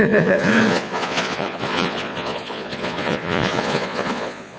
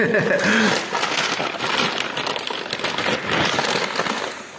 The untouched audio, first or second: second